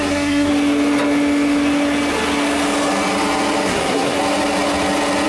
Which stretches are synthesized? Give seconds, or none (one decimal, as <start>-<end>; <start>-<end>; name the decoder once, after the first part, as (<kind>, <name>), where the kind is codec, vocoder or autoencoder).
0.0-0.5 (codec, SNAC); 3.7-4.2